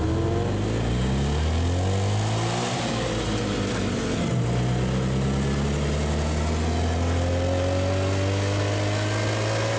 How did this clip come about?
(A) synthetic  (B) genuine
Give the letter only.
B